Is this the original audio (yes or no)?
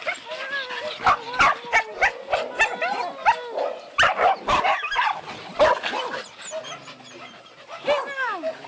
yes